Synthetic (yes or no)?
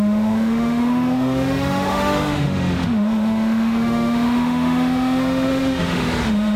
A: yes